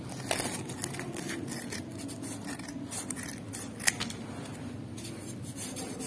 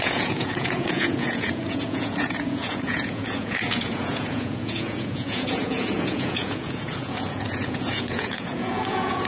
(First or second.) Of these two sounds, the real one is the first